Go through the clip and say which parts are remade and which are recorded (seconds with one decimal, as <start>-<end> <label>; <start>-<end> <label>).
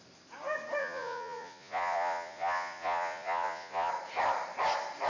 0.0-0.8 recorded; 0.8-3.9 remade; 3.9-5.1 recorded